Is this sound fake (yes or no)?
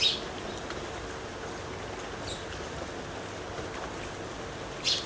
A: no